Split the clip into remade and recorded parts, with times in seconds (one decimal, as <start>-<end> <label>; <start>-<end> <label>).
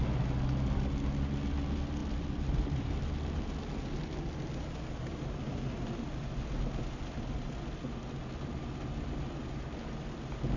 0.0-10.6 recorded